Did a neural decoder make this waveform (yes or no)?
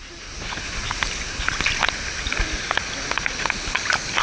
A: no